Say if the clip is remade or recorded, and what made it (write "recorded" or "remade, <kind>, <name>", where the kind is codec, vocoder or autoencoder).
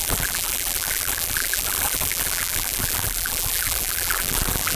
remade, vocoder, BigVGAN v2